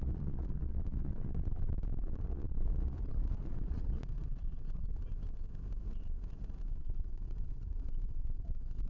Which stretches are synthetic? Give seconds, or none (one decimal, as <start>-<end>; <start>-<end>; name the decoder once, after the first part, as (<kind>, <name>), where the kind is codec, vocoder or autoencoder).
0.0-5.0 (vocoder, Vocos); 6.8-8.9